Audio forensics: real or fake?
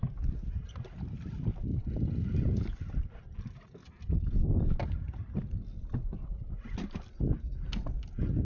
real